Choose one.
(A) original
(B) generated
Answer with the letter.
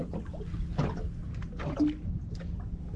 A